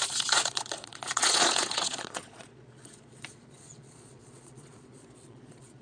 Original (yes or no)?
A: no